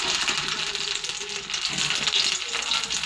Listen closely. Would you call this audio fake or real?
fake